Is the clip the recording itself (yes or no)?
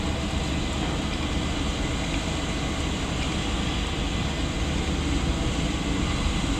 yes